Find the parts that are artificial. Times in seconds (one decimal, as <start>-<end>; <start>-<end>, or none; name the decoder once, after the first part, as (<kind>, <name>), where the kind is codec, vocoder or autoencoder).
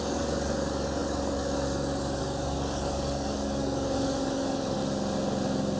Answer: 0.0-4.8 (codec, DAC)